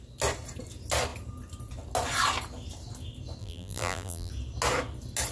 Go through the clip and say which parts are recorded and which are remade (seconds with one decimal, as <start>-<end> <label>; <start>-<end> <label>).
0.0-3.4 recorded; 3.4-4.3 remade; 4.3-5.3 recorded